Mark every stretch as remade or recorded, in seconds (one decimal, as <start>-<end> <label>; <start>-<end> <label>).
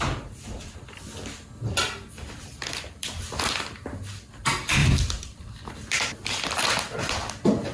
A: 0.0-1.8 recorded; 1.8-4.3 remade; 4.3-4.8 recorded; 4.8-5.6 remade; 5.6-7.7 recorded